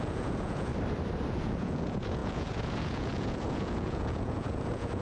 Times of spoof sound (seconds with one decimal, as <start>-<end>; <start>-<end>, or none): 0.0-0.7; 1.3-5.0

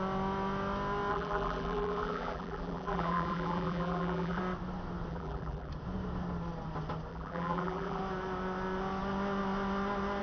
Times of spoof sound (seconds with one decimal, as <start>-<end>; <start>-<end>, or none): 1.1-4.4; 5.1-5.7; 7.1-8.0